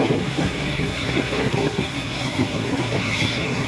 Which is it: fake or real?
fake